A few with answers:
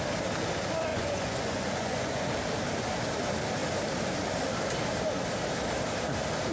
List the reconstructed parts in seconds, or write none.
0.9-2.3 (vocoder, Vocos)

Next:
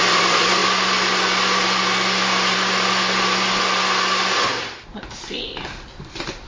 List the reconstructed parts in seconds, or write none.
0.0-0.6 (vocoder, BigVGAN v2); 4.5-6.5

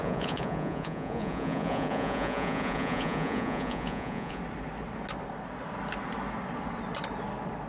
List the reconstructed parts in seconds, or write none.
0.0-4.4 (vocoder, Vocos)

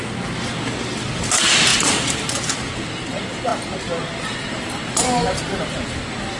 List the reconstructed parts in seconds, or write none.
none